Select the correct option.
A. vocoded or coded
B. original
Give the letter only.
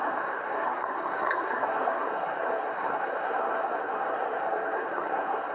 A